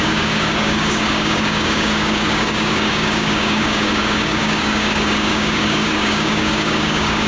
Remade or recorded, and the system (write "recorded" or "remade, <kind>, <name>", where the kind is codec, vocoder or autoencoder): remade, codec, DAC